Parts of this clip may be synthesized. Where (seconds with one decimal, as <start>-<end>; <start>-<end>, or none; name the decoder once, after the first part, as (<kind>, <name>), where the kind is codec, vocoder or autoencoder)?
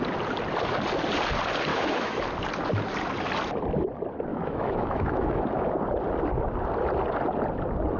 1.7-2.2 (autoencoder, DAC-VAE); 4.3-5.7